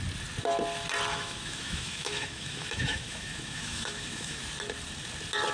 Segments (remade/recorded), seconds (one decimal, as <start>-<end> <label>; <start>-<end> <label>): 0.0-1.1 recorded; 1.1-4.4 remade; 4.4-5.5 recorded